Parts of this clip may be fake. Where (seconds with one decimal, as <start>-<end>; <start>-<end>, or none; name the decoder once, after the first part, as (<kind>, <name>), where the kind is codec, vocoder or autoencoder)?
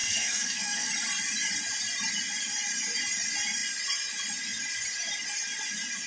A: 0.0-0.9 (codec, SNAC)